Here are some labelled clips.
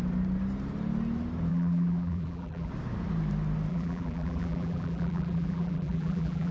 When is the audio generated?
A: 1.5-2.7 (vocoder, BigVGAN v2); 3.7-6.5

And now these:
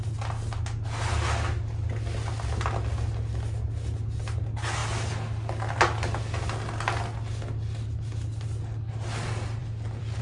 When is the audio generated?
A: 9.6-10.2 (vocoder, BigVGAN v2)

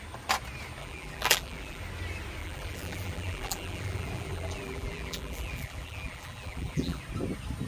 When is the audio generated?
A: 0.8-1.8 (vocoder, BigVGAN v2); 2.4-7.0

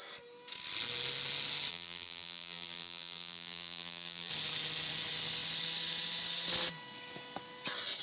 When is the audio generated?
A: 1.7-4.3 (vocoder, BigVGAN v2)

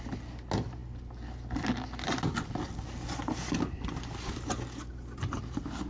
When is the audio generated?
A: none

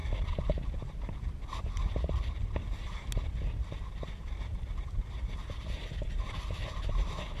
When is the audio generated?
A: 0.0-1.7 (vocoder, BigVGAN v2)

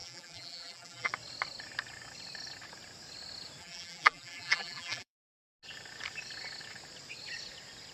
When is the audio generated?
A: 0.0-1.1 (vocoder, BigVGAN v2); 3.6-5.3